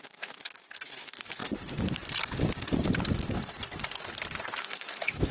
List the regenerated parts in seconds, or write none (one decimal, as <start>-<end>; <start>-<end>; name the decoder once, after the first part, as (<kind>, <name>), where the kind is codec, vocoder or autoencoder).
0.0-1.4 (autoencoder, DAC-VAE); 4.6-5.3